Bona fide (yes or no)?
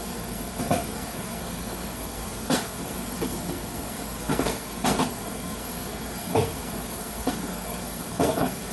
no